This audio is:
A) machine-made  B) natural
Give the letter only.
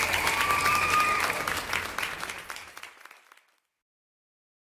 B